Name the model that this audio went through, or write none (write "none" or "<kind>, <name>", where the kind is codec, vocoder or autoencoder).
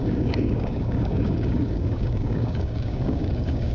codec, DAC